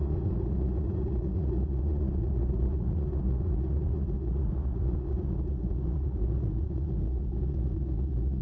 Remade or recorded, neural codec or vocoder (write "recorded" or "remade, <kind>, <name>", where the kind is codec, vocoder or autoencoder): remade, vocoder, Vocos